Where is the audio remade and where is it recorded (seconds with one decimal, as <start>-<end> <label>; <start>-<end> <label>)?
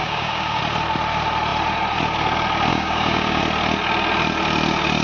0.0-0.6 remade; 0.6-2.7 recorded; 2.7-3.4 remade; 3.4-5.0 recorded